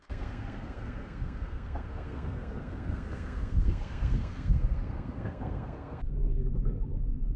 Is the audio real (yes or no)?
no